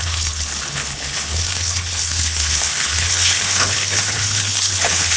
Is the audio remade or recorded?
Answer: remade